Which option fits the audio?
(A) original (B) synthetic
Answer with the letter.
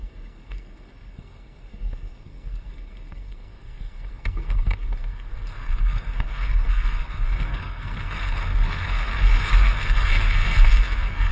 B